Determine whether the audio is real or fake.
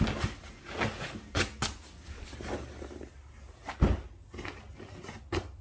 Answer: real